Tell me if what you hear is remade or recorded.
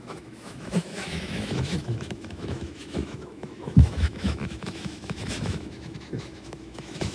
remade